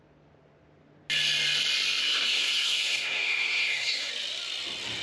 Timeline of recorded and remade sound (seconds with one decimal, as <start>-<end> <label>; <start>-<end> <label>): 0.0-2.0 recorded; 2.0-4.1 remade; 4.1-5.0 recorded